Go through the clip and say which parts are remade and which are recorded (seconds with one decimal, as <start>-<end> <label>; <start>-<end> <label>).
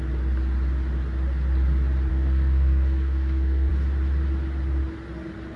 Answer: 0.0-2.1 recorded; 2.1-3.7 remade; 3.7-5.6 recorded